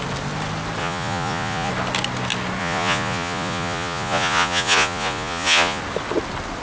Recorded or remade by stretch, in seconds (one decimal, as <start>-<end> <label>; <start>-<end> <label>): 0.0-0.8 recorded; 0.8-1.7 remade; 1.7-2.6 recorded; 2.6-5.8 remade; 5.8-6.6 recorded